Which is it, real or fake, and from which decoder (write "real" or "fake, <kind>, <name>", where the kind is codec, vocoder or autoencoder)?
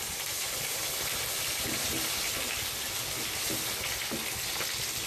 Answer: real